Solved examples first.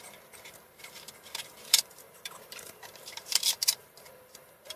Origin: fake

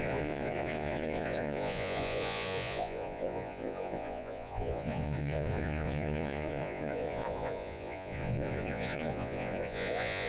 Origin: fake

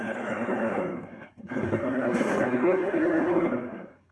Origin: fake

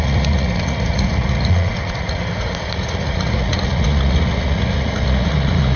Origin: fake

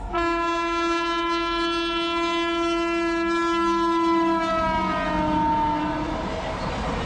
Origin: real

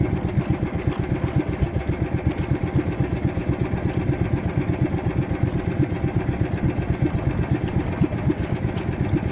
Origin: real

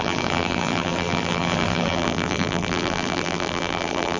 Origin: fake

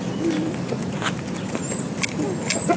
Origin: real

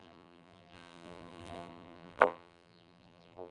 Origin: fake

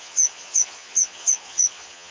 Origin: fake